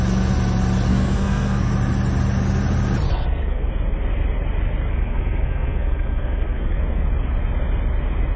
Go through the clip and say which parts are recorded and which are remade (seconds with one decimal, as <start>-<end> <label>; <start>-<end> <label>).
0.0-0.9 recorded; 0.9-1.7 remade; 1.7-3.1 recorded; 3.1-3.7 remade; 3.7-4.9 recorded; 4.9-6.8 remade; 6.8-8.4 recorded